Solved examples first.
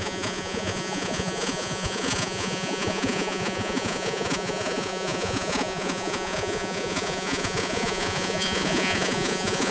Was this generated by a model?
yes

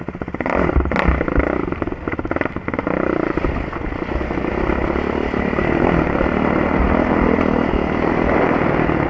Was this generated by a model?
no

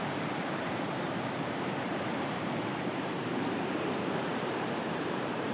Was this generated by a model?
yes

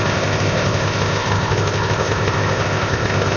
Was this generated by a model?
yes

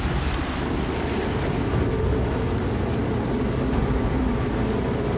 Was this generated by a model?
no